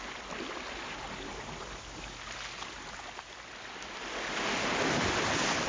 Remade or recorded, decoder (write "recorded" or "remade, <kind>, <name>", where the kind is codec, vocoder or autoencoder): recorded